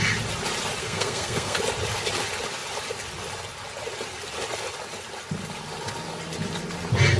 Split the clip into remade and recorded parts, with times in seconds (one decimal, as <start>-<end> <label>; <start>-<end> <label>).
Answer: 0.0-0.8 recorded; 0.8-1.6 remade; 1.6-7.2 recorded